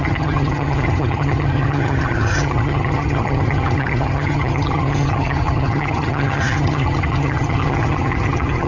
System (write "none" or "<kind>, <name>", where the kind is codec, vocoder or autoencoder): vocoder, HiFi-GAN